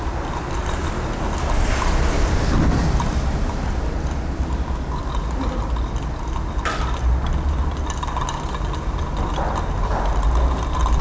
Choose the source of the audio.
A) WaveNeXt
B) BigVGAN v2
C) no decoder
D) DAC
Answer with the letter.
C